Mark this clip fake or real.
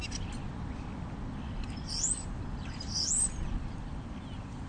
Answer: real